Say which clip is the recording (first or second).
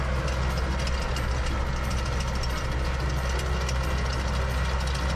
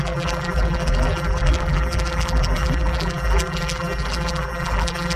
first